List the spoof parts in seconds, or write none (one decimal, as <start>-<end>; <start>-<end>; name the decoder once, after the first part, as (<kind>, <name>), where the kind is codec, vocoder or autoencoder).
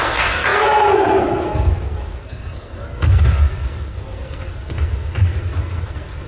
0.0-6.3 (codec, SNAC)